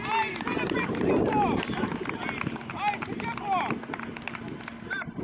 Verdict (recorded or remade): recorded